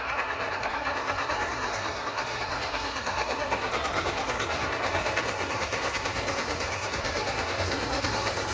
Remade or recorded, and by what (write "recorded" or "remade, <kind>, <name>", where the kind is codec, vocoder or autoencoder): remade, codec, SNAC